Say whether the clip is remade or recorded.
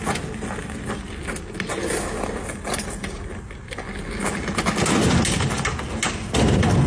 recorded